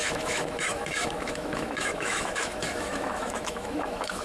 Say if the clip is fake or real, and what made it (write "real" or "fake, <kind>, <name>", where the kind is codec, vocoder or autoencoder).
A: fake, autoencoder, DAC-VAE